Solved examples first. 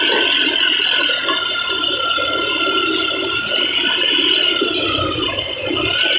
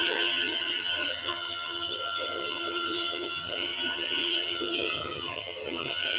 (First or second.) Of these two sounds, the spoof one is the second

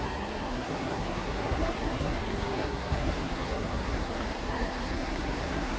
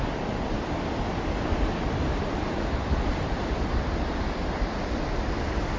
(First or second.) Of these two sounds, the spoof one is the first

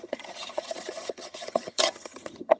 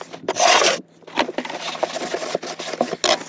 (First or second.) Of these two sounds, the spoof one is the first